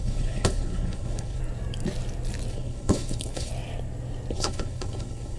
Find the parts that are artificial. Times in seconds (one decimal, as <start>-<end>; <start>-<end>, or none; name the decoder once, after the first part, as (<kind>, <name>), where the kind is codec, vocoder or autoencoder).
0.0-1.4 (codec, HILCodec); 2.5-3.5; 4.3-5.4